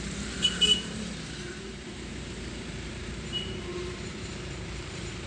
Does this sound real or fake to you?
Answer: fake